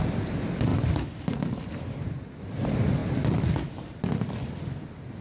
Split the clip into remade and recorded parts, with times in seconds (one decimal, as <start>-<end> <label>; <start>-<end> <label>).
0.0-5.2 recorded